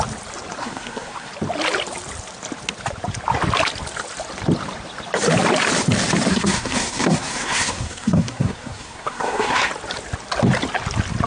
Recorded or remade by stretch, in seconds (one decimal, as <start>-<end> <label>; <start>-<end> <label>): 0.0-0.6 recorded; 0.6-1.3 remade; 1.3-6.3 recorded; 6.3-9.7 remade; 9.7-11.3 recorded